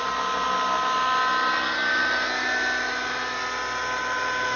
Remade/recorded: recorded